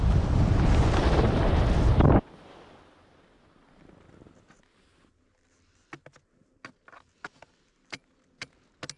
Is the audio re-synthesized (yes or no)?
no